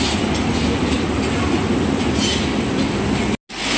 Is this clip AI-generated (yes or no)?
no